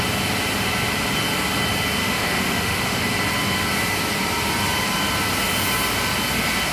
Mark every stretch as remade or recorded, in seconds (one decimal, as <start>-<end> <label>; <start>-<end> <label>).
0.0-2.0 recorded; 2.0-3.0 remade; 3.0-6.7 recorded